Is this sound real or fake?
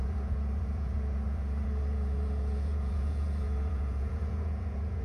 fake